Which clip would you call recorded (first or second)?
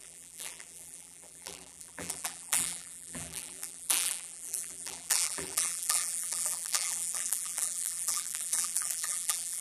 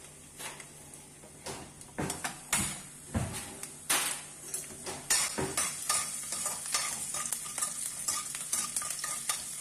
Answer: second